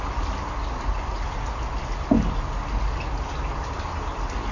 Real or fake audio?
real